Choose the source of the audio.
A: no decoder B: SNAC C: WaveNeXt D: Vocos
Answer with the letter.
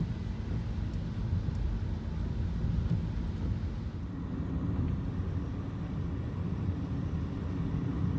A